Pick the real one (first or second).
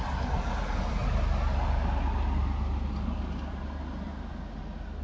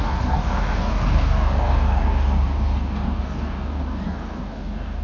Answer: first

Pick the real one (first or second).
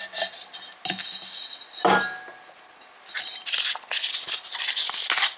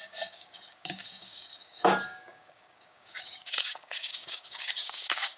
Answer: first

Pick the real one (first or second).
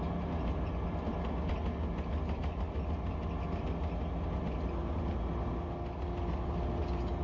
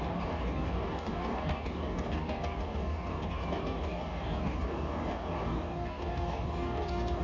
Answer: first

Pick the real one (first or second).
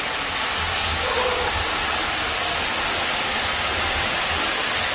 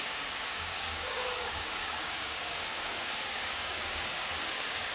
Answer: first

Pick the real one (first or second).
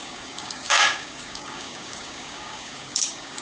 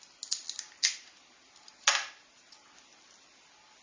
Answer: second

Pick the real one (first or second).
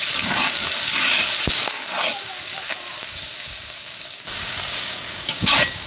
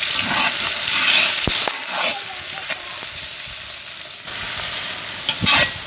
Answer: second